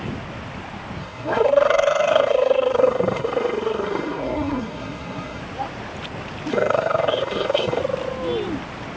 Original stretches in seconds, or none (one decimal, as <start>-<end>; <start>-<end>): 0.0-1.0; 5.4-6.5; 7.8-9.0